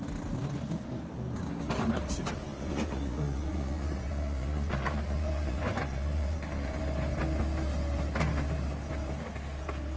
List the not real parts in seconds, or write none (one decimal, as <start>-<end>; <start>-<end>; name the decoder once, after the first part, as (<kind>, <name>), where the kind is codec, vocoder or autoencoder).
2.5-6.8 (vocoder, Vocos)